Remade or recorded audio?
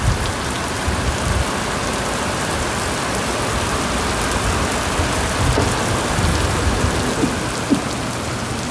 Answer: recorded